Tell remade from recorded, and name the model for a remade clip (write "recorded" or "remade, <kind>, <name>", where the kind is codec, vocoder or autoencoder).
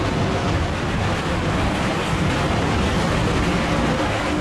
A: recorded